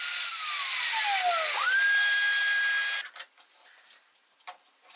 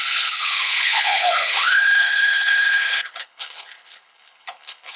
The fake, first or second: second